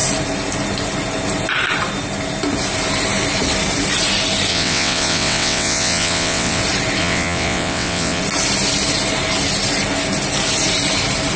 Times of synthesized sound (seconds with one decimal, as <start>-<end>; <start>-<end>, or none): 4.5-6.6; 7.0-8.2